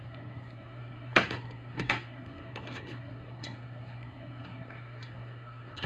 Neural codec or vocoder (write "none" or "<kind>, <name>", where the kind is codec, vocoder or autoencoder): codec, SNAC